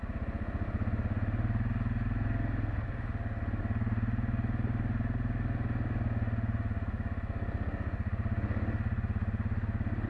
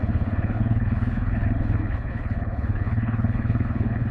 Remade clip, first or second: second